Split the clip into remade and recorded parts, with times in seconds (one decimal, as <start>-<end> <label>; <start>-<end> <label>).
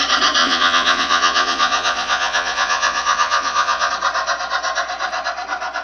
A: 0.0-0.4 recorded; 0.4-3.9 remade; 3.9-5.8 recorded